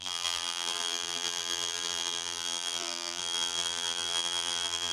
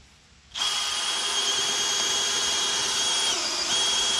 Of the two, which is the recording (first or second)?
second